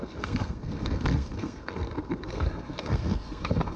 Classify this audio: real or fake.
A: fake